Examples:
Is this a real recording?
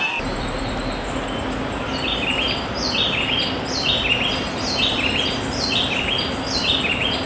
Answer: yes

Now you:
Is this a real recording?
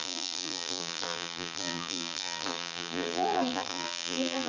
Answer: no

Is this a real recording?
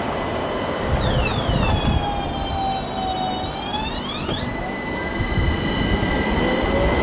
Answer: yes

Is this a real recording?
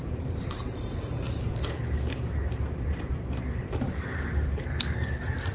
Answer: no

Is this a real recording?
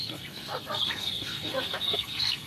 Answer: no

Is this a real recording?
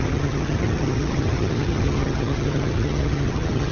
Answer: no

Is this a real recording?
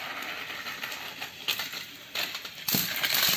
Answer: yes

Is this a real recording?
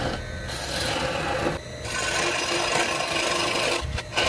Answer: yes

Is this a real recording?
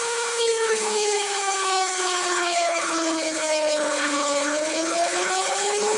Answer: no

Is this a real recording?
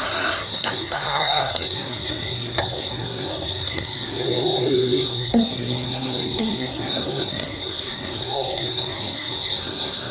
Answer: no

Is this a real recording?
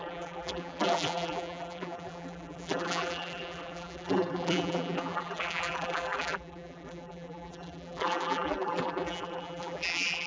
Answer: no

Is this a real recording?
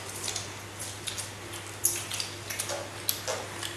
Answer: yes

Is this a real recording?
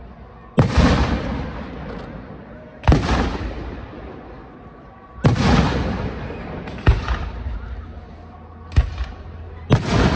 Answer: yes